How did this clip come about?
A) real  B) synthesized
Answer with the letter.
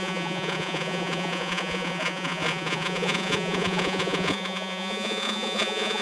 B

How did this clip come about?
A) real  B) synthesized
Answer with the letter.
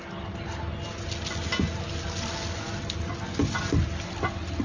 A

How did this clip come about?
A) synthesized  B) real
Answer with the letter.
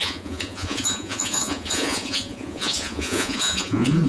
A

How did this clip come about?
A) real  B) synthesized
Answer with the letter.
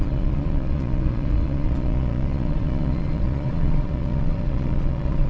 B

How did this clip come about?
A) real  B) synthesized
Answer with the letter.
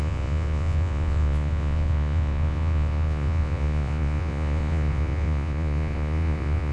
B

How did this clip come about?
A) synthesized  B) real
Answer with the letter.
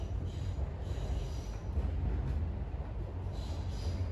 B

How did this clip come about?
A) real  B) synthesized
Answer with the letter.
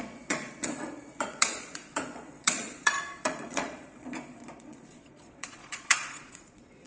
B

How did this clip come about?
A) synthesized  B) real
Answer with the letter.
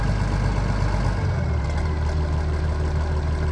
B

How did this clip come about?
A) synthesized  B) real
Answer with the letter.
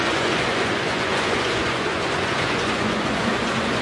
A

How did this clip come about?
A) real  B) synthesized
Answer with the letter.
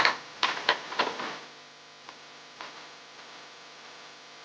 A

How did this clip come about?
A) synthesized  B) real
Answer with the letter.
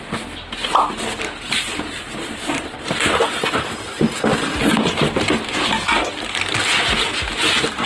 B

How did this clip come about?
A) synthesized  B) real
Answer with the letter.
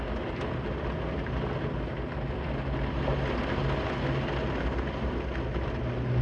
B